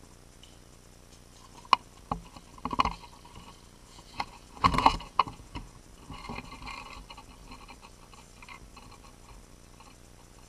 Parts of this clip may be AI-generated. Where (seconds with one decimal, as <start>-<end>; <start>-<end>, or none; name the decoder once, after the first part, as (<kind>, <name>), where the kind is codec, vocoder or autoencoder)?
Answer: 3.8-5.8 (vocoder, Vocos)